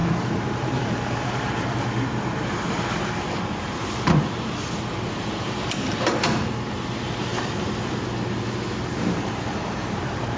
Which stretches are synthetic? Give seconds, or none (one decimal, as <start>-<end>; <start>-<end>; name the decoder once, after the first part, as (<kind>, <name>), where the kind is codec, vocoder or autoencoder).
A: 0.0-7.3 (vocoder, BigVGAN v2); 9.0-10.4